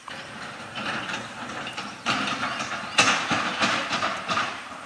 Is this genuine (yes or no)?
no